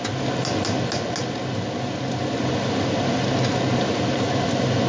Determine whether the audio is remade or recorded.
recorded